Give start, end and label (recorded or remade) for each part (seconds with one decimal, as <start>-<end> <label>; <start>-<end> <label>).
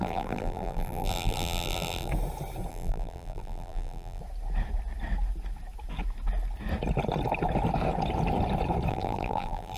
0.0-2.1 remade; 2.1-2.7 recorded; 2.7-4.2 remade; 4.2-8.9 recorded; 8.9-9.8 remade